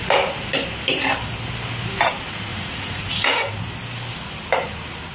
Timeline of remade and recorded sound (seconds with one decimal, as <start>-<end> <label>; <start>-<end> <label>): 0.0-2.5 recorded; 2.5-3.5 remade; 3.5-5.1 recorded